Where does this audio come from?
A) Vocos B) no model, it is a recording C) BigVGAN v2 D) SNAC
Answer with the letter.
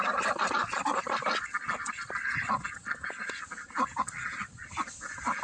B